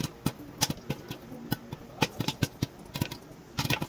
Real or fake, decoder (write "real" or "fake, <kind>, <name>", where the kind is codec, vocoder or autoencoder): real